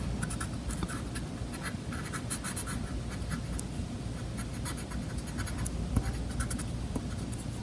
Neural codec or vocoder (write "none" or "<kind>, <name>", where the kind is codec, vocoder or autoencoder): none